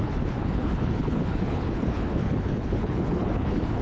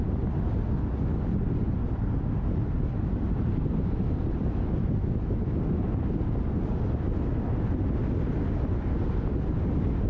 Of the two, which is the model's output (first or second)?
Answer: first